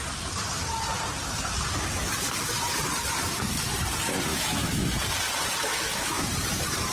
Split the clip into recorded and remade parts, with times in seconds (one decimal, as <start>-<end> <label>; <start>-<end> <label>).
0.0-4.3 recorded; 4.3-4.9 remade; 4.9-5.7 recorded; 5.7-6.3 remade; 6.3-6.9 recorded